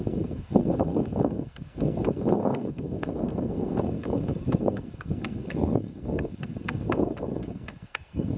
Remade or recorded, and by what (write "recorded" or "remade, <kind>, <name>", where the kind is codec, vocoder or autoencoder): remade, codec, SNAC